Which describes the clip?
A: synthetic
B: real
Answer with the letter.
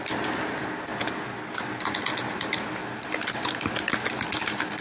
B